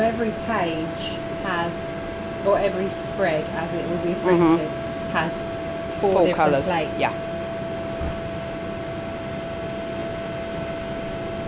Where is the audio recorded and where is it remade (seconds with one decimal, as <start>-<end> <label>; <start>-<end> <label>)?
0.0-11.5 recorded